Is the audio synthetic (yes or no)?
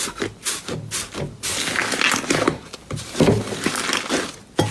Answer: no